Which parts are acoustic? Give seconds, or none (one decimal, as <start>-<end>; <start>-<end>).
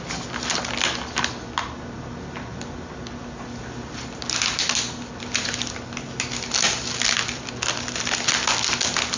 0.0-9.2